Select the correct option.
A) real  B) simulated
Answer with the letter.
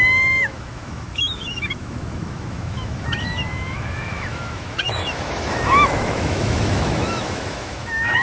B